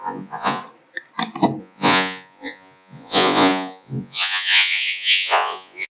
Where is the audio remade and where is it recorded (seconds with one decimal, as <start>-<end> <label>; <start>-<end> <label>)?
0.0-0.6 remade; 0.6-1.6 recorded; 1.6-5.9 remade